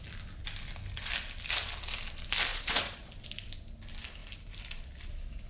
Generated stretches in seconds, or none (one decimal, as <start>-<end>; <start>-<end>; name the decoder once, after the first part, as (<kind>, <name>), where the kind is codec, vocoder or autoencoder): 2.5-3.1 (vocoder, Vocos)